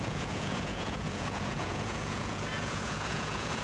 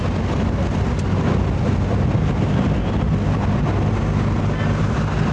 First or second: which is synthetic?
first